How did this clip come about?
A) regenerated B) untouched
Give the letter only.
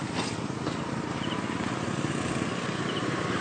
B